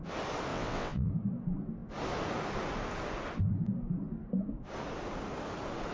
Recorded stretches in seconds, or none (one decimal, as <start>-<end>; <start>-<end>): 0.0-0.5; 1.1-5.9